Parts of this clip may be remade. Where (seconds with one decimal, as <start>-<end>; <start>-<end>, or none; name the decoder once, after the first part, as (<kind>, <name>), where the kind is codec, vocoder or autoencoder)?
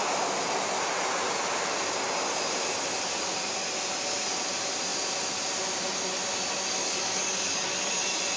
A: 6.8-8.0 (codec, DAC)